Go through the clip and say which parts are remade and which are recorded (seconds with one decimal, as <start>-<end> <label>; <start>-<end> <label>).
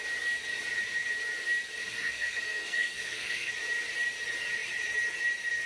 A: 0.0-1.8 recorded; 1.8-3.5 remade; 3.5-5.7 recorded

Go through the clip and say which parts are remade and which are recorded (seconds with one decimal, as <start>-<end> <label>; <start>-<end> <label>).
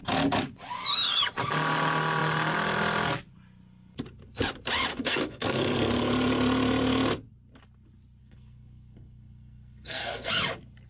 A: 0.0-4.9 recorded; 4.9-6.0 remade; 6.0-8.2 recorded; 8.2-10.3 remade; 10.3-10.9 recorded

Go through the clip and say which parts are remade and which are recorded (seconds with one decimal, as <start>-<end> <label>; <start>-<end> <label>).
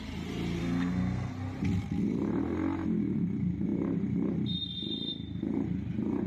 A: 0.0-0.6 recorded; 0.6-1.3 remade; 1.3-6.3 recorded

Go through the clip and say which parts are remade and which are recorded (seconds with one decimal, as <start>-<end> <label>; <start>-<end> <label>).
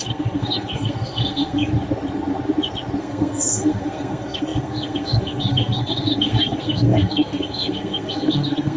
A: 0.0-1.7 remade; 1.7-3.0 recorded; 3.0-8.8 remade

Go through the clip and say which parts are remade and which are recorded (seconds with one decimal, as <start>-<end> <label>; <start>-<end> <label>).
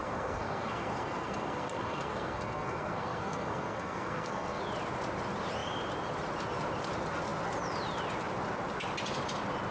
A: 0.0-4.6 remade; 4.6-9.7 recorded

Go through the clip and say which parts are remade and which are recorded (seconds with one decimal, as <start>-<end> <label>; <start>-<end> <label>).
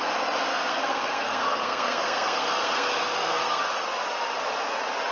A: 0.0-0.5 recorded; 0.5-3.6 remade; 3.6-5.1 recorded